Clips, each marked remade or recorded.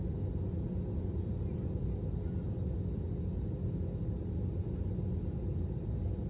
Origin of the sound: recorded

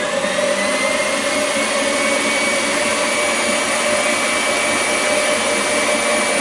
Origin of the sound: recorded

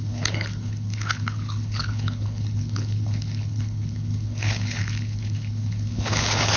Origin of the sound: remade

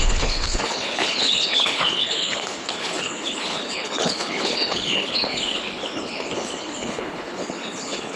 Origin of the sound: remade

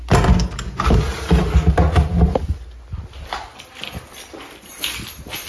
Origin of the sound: recorded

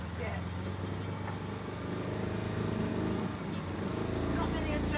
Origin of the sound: recorded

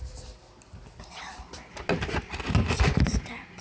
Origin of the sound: recorded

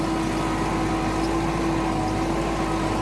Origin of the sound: recorded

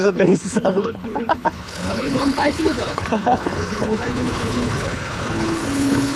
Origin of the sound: remade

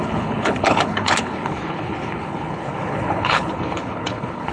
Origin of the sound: remade